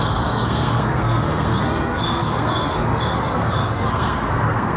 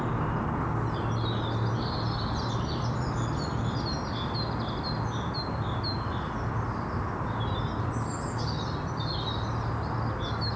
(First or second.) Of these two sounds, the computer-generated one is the first